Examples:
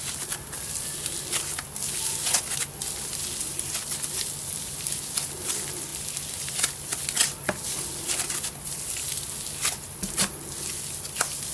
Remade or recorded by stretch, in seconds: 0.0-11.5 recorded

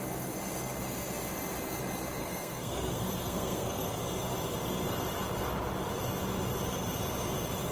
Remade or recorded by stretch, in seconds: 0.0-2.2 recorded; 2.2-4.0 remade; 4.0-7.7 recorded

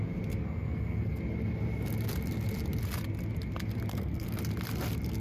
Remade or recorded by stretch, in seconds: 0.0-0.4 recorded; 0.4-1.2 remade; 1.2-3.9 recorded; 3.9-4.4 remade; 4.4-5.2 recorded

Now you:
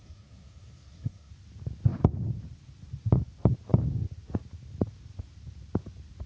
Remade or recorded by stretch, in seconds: 0.0-1.3 remade; 1.3-6.3 recorded

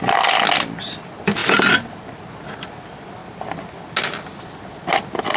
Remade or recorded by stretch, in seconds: 0.0-5.4 recorded